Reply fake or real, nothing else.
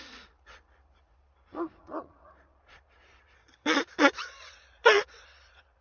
fake